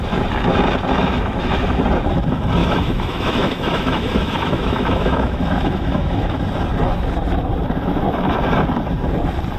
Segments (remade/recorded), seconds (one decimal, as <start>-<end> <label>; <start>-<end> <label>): 0.0-1.0 recorded; 1.0-1.8 remade; 1.8-2.6 recorded; 2.6-6.4 remade; 6.4-9.6 recorded